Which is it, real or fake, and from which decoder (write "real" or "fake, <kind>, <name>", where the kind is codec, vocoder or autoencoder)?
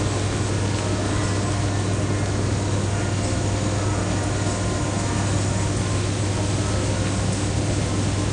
real